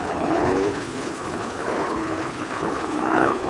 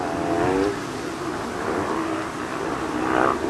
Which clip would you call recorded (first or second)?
second